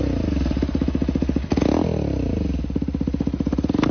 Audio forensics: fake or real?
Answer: real